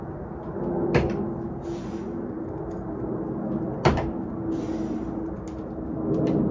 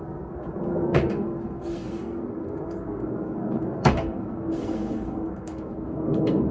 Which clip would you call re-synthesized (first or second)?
second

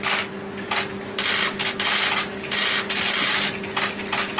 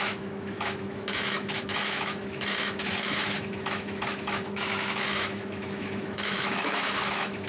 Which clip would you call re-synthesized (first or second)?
second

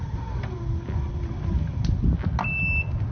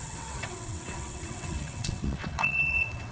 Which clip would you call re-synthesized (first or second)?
second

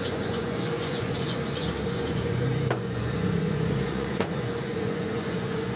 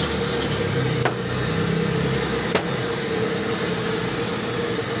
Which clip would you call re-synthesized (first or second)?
first